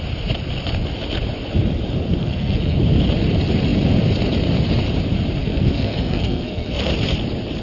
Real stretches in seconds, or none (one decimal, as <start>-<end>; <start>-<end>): 0.0-2.2; 2.8-5.4; 6.9-7.6